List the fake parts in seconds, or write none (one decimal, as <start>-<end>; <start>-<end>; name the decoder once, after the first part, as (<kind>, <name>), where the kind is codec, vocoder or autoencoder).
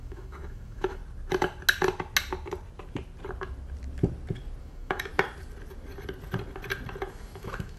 0.0-1.0 (autoencoder, DAC-VAE); 4.6-5.1; 7.1-7.8